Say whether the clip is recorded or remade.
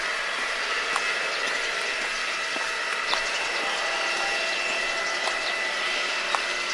recorded